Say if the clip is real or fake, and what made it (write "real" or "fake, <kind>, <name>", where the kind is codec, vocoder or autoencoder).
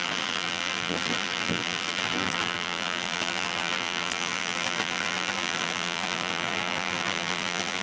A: fake, vocoder, BigVGAN v2